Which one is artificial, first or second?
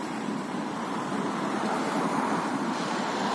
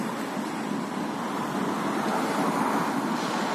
first